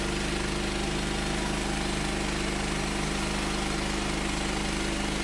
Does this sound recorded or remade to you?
recorded